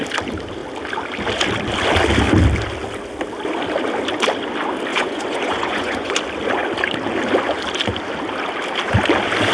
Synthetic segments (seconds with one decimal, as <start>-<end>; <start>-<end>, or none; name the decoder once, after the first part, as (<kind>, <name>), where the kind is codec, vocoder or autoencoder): 4.9-6.1 (vocoder, Vocos)